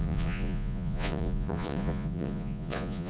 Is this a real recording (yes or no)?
no